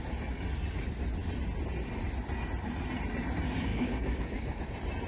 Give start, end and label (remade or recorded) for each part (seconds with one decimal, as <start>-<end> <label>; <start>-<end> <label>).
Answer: 0.0-3.7 recorded; 3.7-4.6 remade; 4.6-5.1 recorded